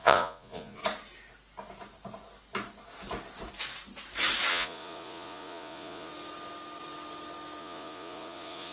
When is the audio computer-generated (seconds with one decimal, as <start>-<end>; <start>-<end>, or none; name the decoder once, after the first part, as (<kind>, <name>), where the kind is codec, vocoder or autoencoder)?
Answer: 0.0-0.8 (vocoder, Vocos); 4.5-6.1; 7.6-8.7